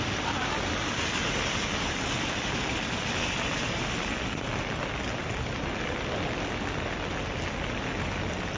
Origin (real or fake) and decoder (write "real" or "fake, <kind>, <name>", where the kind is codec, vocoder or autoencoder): real